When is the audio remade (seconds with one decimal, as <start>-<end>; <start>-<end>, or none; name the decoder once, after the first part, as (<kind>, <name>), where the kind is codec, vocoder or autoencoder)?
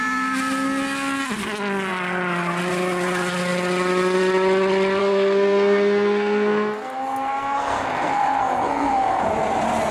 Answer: 5.0-9.2 (codec, SNAC)